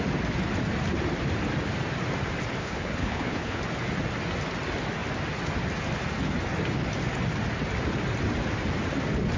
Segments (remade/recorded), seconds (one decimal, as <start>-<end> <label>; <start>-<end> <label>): 0.0-2.6 recorded; 2.6-3.6 remade; 3.6-9.4 recorded